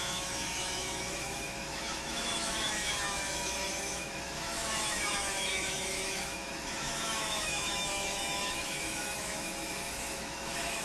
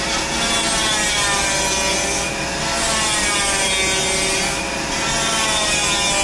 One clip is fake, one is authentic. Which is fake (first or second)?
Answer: first